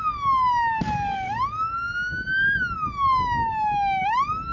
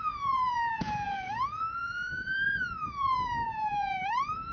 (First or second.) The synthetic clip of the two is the second